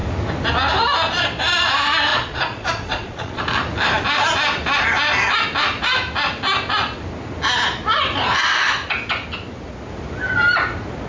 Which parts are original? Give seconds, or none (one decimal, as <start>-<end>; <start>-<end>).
0.0-2.1; 3.4-11.1